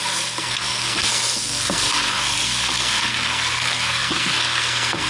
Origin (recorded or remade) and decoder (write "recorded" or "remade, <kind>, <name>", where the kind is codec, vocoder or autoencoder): remade, codec, SNAC